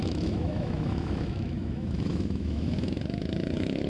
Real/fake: fake